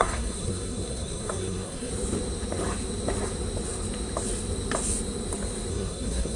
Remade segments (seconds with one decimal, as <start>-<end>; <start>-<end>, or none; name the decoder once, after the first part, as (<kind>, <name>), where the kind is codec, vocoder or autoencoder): 0.0-1.9 (codec, SNAC); 5.7-6.4